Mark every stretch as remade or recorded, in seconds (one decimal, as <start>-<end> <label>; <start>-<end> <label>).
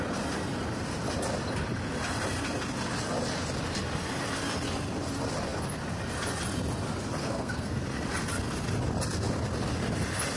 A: 0.0-7.2 recorded; 7.2-7.8 remade; 7.8-10.4 recorded